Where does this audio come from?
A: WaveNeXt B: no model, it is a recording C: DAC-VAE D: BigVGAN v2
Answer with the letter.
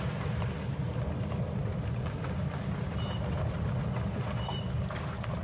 B